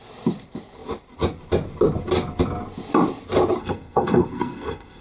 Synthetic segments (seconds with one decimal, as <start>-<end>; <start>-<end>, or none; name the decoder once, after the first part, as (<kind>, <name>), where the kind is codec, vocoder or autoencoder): 3.6-5.0 (codec, SNAC)